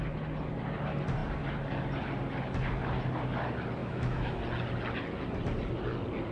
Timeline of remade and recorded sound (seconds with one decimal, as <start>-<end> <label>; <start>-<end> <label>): 0.0-3.8 recorded; 3.8-4.4 remade; 4.4-6.3 recorded